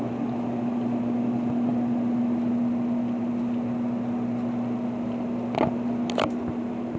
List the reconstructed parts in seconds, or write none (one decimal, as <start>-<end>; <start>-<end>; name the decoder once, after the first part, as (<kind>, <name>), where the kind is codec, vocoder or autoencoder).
none